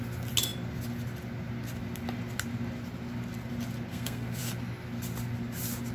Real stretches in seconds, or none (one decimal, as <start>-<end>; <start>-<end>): 0.0-3.9; 4.4-5.9